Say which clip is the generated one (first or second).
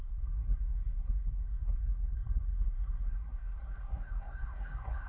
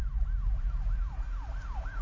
first